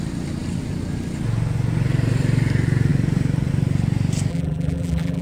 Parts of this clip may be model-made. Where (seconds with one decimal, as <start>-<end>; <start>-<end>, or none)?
4.3-5.2